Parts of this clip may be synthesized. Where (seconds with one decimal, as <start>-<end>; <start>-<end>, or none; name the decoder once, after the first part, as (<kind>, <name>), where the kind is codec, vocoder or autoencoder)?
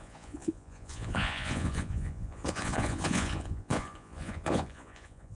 0.0-5.3 (vocoder, Vocos)